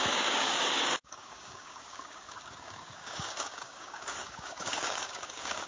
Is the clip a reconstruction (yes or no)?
yes